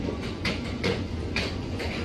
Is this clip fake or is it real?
fake